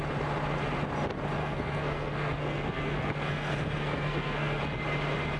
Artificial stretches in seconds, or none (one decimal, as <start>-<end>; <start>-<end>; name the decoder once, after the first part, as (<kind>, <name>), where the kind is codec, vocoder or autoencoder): 1.4-4.6 (codec, SNAC)